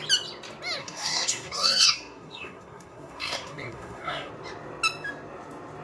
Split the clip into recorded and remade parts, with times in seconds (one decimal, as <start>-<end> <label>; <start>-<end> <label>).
0.0-0.8 recorded; 0.8-4.3 remade; 4.3-5.8 recorded